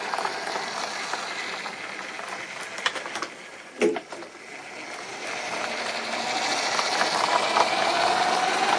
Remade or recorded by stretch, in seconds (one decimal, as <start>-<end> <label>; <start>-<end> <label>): 0.0-3.4 recorded; 3.4-5.8 remade; 5.8-8.8 recorded